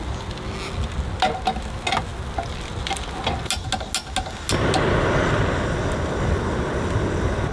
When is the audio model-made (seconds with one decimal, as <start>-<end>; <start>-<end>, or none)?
none